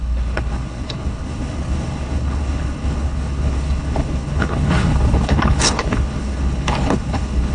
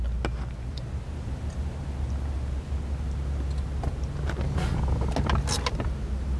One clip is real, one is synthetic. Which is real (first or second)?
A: second